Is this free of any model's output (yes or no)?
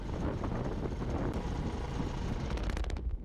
yes